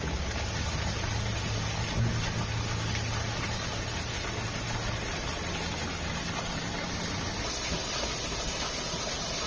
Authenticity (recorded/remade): recorded